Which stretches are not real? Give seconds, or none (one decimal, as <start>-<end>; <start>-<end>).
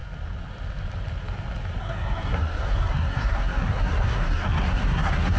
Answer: 1.8-5.4